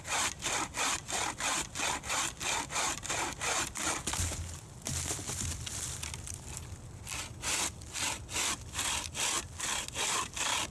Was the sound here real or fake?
real